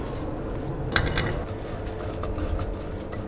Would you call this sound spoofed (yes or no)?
no